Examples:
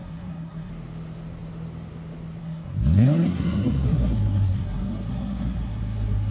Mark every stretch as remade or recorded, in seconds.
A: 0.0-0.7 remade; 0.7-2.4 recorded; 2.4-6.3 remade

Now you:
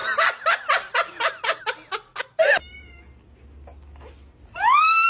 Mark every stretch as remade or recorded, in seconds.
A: 0.0-5.1 recorded

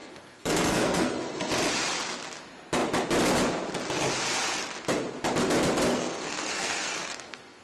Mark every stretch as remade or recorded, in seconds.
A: 0.0-1.5 remade; 1.5-5.9 recorded; 5.9-7.6 remade